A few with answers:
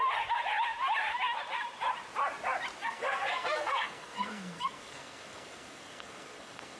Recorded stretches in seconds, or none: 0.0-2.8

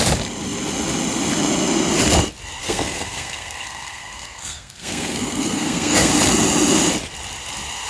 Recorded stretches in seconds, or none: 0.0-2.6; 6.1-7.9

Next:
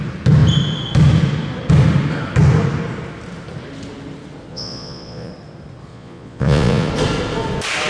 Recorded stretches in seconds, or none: 0.0-4.5; 5.3-5.9; 6.9-7.9

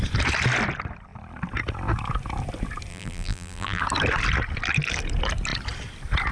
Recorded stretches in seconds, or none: 0.0-2.9; 3.8-6.3